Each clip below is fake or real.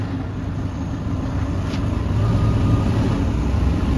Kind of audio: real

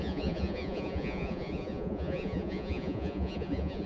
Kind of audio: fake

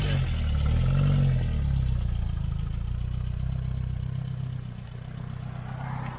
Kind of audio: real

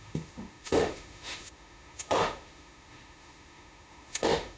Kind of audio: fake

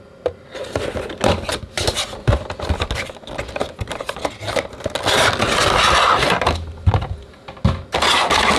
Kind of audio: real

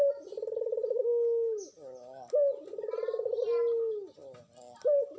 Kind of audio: real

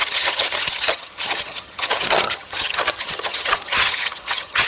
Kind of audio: fake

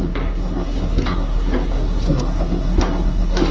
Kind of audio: fake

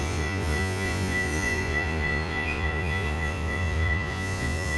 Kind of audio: fake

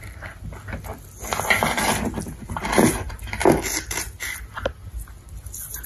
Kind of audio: real